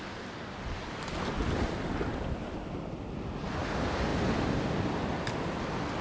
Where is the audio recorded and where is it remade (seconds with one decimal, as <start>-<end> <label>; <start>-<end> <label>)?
0.0-6.0 recorded